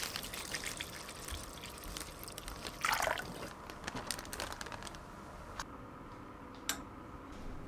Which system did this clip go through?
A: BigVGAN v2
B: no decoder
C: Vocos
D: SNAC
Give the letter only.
B